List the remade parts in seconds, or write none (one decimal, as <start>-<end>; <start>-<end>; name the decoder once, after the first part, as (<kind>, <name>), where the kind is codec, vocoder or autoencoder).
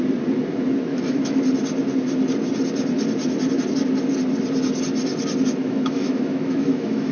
0.9-1.4 (autoencoder, DAC-VAE); 5.6-7.1